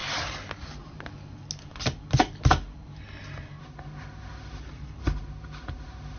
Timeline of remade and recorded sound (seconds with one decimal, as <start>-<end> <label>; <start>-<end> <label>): 0.0-3.6 recorded; 3.6-4.6 remade; 4.6-5.0 recorded; 5.0-6.2 remade